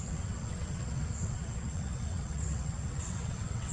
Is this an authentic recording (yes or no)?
no